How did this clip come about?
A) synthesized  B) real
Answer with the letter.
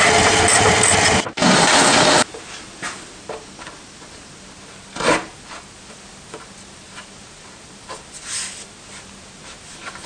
B